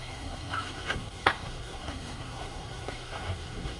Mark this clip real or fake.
fake